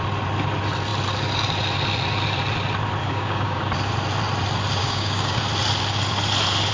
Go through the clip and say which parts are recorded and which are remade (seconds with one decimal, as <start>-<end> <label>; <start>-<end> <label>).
0.0-3.0 recorded; 3.0-3.6 remade; 3.6-4.8 recorded; 4.8-5.4 remade; 5.4-6.7 recorded